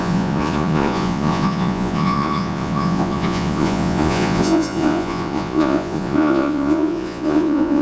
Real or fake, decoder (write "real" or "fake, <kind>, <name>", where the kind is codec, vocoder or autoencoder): fake, vocoder, Vocos